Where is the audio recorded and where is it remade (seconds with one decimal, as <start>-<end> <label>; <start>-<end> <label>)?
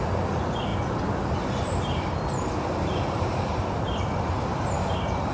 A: 0.0-5.3 recorded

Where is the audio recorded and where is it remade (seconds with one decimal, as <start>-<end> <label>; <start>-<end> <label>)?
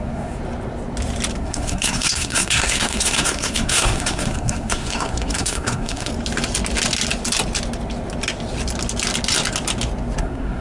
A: 0.0-0.4 remade; 0.4-1.4 recorded; 1.4-6.1 remade; 6.1-10.2 recorded; 10.2-10.6 remade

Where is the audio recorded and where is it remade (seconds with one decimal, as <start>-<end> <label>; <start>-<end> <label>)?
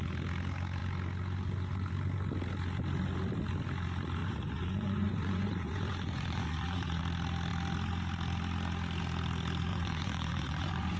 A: 0.0-4.2 recorded; 4.2-7.0 remade; 7.0-9.7 recorded; 9.7-11.0 remade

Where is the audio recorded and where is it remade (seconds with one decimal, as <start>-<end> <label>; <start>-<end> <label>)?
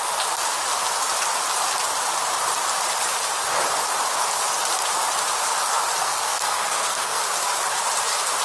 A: 0.0-6.0 recorded; 6.0-7.2 remade; 7.2-8.4 recorded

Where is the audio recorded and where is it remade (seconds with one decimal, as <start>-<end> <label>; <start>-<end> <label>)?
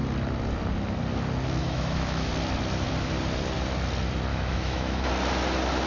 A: 0.0-1.6 recorded; 1.6-2.3 remade; 2.3-4.3 recorded; 4.3-5.1 remade; 5.1-5.9 recorded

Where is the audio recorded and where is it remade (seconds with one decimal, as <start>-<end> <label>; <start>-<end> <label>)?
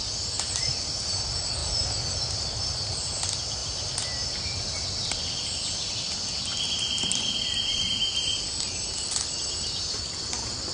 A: 0.0-10.7 recorded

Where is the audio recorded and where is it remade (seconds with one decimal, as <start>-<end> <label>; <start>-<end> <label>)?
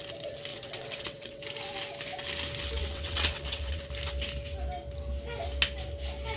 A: 0.0-0.5 recorded; 0.5-1.4 remade; 1.4-2.8 recorded; 2.8-3.9 remade; 3.9-6.4 recorded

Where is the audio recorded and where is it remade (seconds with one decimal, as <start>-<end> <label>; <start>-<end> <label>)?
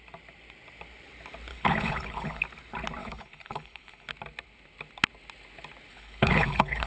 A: 0.0-1.5 recorded; 1.5-2.4 remade; 2.4-3.0 recorded; 3.0-4.1 remade; 4.1-5.9 recorded; 5.9-6.9 remade